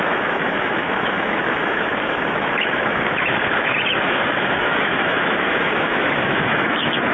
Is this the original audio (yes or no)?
no